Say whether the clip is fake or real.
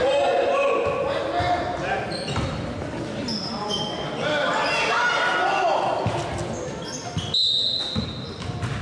real